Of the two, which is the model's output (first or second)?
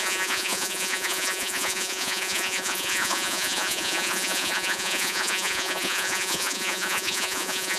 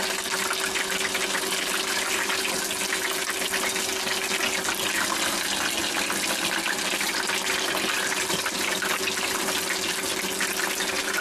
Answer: first